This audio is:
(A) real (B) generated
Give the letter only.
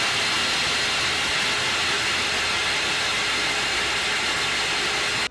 A